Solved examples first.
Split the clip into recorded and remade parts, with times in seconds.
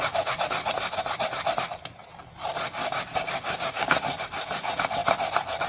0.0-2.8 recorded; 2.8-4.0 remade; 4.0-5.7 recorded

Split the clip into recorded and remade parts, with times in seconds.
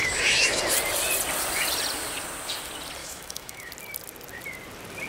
0.0-0.6 remade; 0.6-3.0 recorded; 3.0-3.7 remade; 3.7-5.1 recorded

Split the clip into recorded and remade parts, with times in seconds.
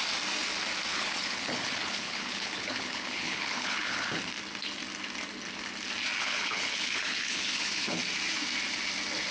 0.0-0.9 recorded; 0.9-4.2 remade; 4.2-6.2 recorded; 6.2-8.0 remade; 8.0-9.3 recorded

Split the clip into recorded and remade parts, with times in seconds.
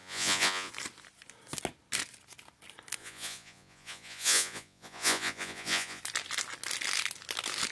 0.0-0.7 remade; 0.7-3.0 recorded; 3.0-6.0 remade; 6.0-7.7 recorded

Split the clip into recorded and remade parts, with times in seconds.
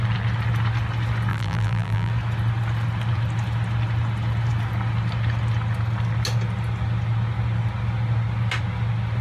0.0-1.3 recorded; 1.3-2.1 remade; 2.1-9.2 recorded